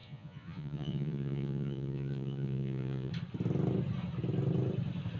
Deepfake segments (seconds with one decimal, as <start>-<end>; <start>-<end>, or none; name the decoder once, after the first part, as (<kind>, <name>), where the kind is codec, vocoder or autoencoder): 0.0-3.1 (vocoder, Vocos)